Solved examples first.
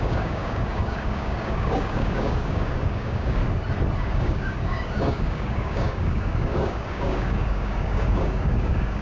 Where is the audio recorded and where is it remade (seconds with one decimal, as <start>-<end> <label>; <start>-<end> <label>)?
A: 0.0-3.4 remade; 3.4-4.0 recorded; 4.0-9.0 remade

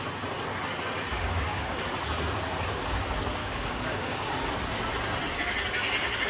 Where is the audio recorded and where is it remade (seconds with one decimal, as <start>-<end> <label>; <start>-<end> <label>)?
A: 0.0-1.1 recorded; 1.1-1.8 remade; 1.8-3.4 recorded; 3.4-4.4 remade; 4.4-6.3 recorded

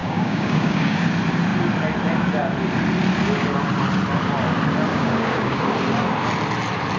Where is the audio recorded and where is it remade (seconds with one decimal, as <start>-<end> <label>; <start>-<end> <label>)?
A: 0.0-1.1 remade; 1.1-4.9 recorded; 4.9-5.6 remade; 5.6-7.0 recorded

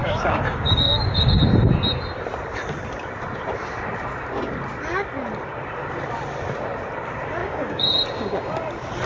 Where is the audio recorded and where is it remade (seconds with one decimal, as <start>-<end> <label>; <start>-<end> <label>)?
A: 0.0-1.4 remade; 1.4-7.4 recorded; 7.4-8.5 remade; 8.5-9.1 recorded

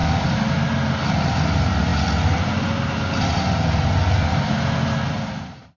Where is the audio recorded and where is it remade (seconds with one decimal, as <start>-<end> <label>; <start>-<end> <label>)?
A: 0.0-5.8 recorded

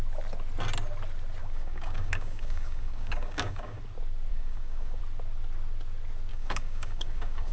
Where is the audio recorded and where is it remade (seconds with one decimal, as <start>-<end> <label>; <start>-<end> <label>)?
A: 0.0-1.4 recorded; 1.4-3.8 remade; 3.8-4.3 recorded; 4.3-5.0 remade; 5.0-6.3 recorded; 6.3-7.5 remade

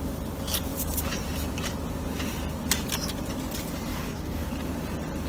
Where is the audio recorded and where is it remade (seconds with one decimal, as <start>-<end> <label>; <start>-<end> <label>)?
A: 0.0-3.9 recorded; 3.9-4.5 remade; 4.5-5.3 recorded

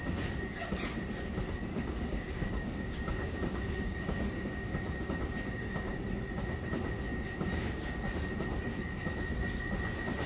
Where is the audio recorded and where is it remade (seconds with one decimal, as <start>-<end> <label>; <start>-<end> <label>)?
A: 0.0-1.7 recorded; 1.7-6.0 remade; 6.0-7.1 recorded; 7.1-8.0 remade; 8.0-10.3 recorded